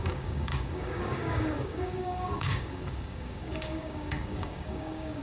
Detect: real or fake fake